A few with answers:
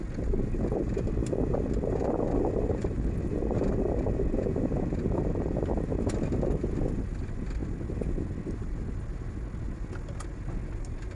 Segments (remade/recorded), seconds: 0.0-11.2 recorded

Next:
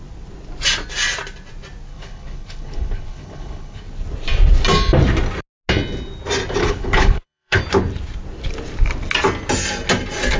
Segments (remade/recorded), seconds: 0.0-1.9 recorded; 1.9-3.8 remade; 3.8-6.6 recorded; 6.6-7.6 remade; 7.6-10.4 recorded

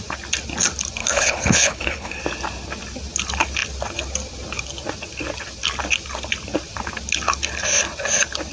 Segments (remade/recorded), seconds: 0.0-1.0 recorded; 1.0-2.2 remade; 2.2-8.5 recorded

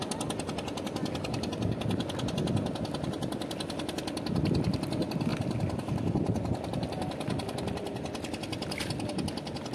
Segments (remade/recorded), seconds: 0.0-9.7 recorded

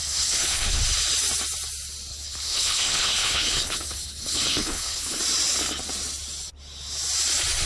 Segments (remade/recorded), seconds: 0.0-0.8 remade; 0.8-2.1 recorded; 2.1-5.2 remade; 5.2-7.7 recorded

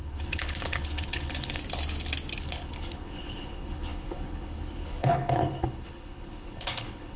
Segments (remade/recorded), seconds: 0.0-1.6 remade; 1.6-2.4 recorded; 2.4-7.2 remade

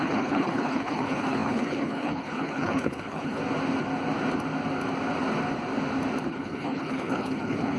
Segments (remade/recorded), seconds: 0.0-3.4 remade; 3.4-6.3 recorded; 6.3-7.8 remade